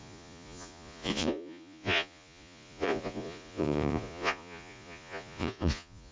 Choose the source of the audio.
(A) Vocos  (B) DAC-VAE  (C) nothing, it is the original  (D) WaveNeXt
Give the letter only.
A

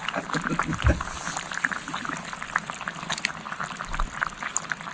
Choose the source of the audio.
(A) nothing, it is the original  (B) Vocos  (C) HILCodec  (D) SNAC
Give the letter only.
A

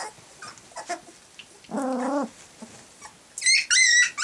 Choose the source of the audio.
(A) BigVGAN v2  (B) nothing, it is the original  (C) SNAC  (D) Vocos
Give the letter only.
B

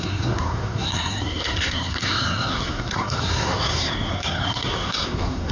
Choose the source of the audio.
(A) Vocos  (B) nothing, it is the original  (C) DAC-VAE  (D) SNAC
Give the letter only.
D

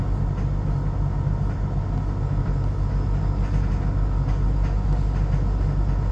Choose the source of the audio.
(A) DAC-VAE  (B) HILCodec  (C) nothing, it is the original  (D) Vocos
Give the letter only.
C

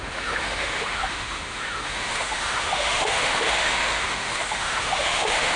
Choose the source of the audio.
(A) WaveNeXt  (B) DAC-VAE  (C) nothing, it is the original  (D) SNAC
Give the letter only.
B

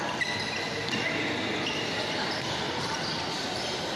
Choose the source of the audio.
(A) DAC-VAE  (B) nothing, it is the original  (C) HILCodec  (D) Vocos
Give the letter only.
B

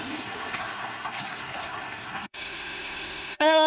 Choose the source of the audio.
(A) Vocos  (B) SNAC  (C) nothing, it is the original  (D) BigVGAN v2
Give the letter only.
B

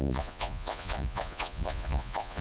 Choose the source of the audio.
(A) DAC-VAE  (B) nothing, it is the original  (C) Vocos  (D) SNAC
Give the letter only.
C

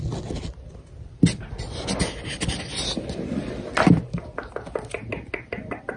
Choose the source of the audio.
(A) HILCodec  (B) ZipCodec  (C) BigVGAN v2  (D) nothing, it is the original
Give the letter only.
D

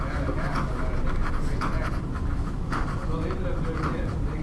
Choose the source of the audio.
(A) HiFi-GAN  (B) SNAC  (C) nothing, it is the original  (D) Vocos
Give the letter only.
C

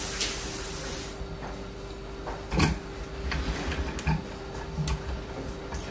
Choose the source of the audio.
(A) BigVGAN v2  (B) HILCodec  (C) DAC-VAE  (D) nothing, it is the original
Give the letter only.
D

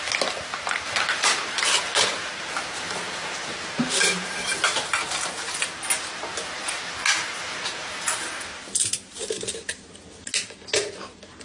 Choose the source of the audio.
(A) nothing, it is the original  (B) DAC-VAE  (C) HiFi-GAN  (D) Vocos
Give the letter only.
A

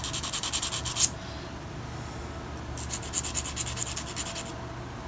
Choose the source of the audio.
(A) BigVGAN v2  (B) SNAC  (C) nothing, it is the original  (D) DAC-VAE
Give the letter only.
C